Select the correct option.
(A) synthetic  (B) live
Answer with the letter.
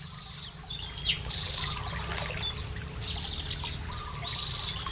B